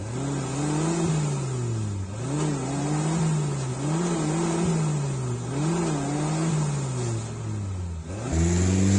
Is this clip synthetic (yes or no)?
no